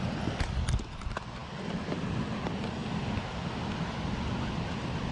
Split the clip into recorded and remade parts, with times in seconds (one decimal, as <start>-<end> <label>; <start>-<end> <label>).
0.0-5.1 recorded